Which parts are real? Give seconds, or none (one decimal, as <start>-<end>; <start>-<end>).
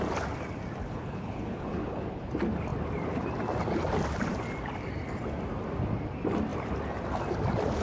0.0-0.8; 2.3-7.8